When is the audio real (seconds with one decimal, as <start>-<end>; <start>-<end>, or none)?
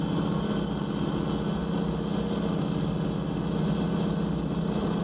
0.0-5.0